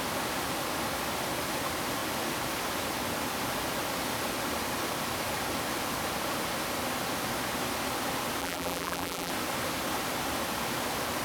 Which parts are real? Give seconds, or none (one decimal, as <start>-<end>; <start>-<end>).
0.0-8.4; 9.3-11.2